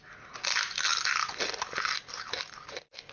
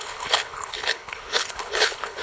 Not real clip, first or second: second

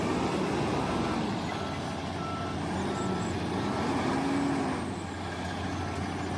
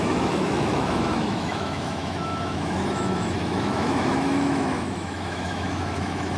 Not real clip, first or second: second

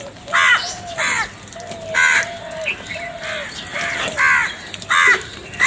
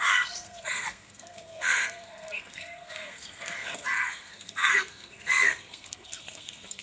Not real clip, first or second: second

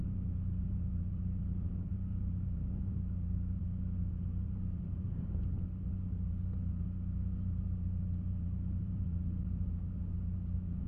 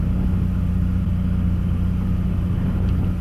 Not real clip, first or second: first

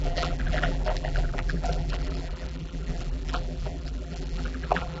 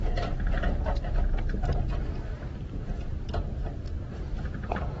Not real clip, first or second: first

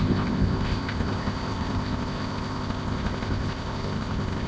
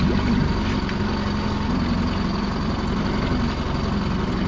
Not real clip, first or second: first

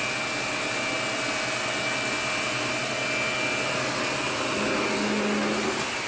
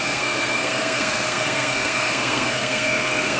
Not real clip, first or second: second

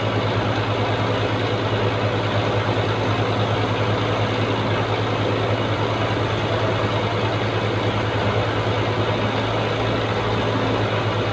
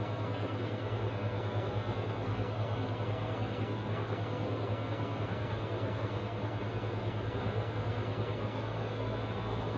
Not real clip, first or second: second